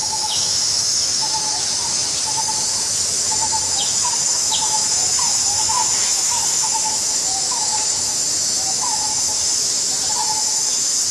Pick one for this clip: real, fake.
fake